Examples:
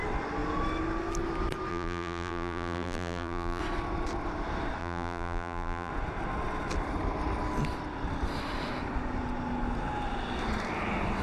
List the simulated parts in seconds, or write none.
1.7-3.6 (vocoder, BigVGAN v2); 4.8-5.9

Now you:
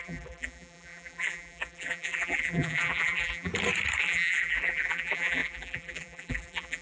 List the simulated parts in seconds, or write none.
0.0-3.5 (vocoder, BigVGAN v2); 4.0-6.8

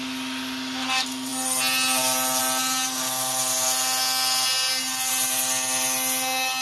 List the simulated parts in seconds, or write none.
none

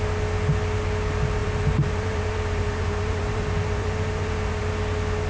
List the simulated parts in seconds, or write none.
1.4-4.6 (vocoder, BigVGAN v2)